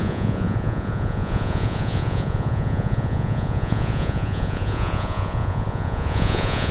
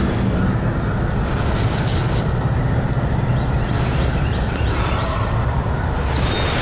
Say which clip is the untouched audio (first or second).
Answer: second